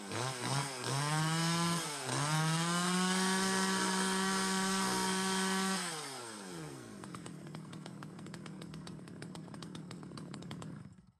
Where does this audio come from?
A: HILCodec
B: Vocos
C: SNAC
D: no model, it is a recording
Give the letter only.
C